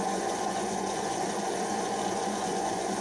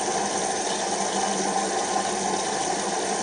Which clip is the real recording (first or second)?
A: second